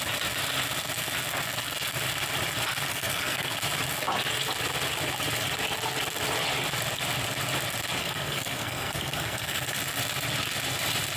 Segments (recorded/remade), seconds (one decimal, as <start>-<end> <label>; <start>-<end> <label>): 0.0-2.9 recorded; 2.9-3.5 remade; 3.5-8.0 recorded; 8.0-9.8 remade; 9.8-11.2 recorded